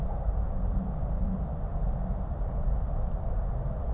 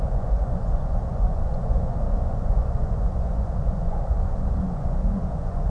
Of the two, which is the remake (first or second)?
second